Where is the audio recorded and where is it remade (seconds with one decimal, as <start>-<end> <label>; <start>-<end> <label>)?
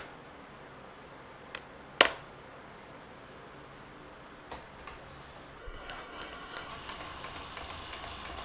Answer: 0.0-5.6 recorded; 5.6-6.7 remade; 6.7-8.4 recorded